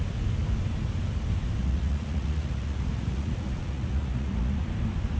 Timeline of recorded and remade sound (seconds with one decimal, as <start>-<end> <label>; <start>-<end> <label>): 0.0-1.6 recorded; 1.6-4.7 remade; 4.7-5.2 recorded